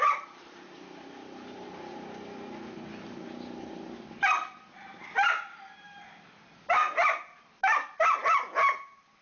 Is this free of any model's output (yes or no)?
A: yes